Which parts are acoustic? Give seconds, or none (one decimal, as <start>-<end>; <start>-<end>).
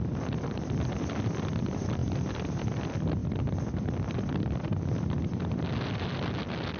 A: 3.2-6.8